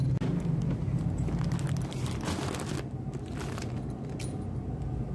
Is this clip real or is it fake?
real